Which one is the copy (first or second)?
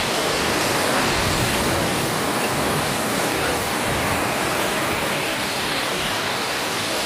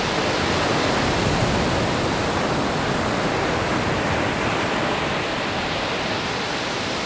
first